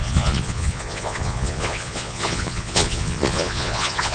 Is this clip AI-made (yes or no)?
yes